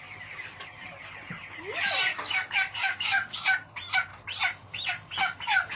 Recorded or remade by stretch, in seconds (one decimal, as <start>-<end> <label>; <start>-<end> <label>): 0.0-2.1 recorded; 2.1-3.4 remade; 3.4-5.8 recorded

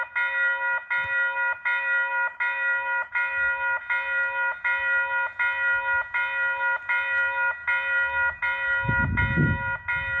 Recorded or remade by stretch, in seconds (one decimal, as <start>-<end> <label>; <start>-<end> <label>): 0.0-10.2 recorded

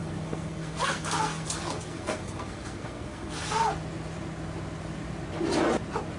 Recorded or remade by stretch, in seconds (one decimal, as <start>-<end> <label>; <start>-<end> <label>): 0.0-3.7 remade; 3.7-6.2 recorded